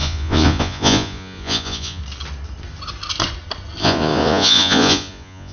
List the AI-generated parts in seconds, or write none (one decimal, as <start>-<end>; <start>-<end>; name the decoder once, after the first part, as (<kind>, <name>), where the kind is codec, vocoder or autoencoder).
0.0-2.0 (vocoder, Vocos); 3.8-5.5